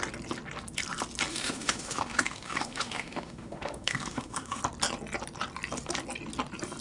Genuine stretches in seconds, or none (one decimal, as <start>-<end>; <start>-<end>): 0.0-1.3; 4.6-6.8